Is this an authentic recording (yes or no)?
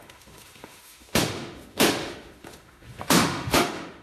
no